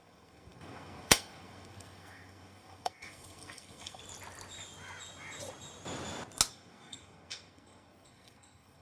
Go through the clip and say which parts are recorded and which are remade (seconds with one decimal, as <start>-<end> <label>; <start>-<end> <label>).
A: 0.0-4.0 remade; 4.0-6.5 recorded; 6.5-8.8 remade